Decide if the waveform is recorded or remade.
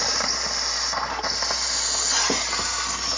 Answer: recorded